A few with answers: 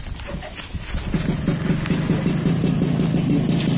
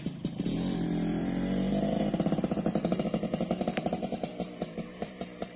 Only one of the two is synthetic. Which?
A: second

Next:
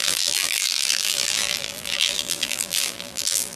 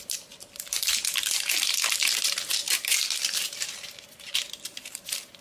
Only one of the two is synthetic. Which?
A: first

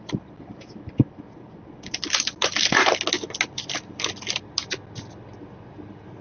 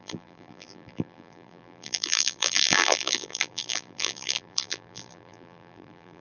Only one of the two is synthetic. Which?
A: second